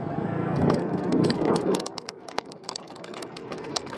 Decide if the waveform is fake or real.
fake